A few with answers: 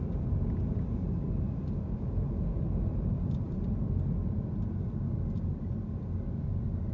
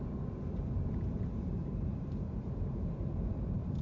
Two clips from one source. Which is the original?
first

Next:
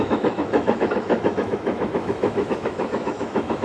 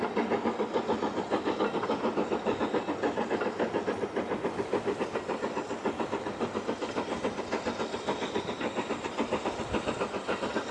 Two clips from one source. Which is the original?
second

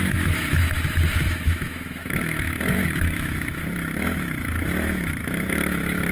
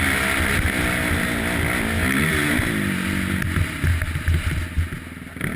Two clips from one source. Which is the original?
second